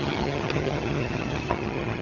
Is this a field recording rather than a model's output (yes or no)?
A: no